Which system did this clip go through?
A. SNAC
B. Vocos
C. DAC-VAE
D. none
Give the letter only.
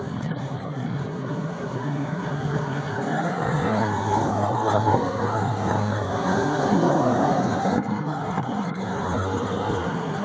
A